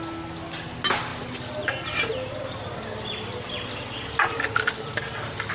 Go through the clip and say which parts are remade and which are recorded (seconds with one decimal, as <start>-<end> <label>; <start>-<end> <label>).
0.0-5.5 recorded